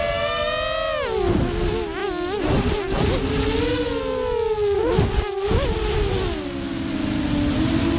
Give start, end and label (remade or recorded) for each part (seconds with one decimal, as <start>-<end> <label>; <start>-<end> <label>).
0.0-8.0 recorded